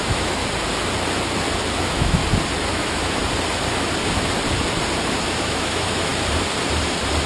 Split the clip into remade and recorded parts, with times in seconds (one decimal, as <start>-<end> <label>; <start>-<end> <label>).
0.0-0.4 remade; 0.4-1.8 recorded; 1.8-2.2 remade; 2.2-2.7 recorded; 2.7-3.2 remade; 3.2-5.4 recorded; 5.4-6.1 remade; 6.1-7.3 recorded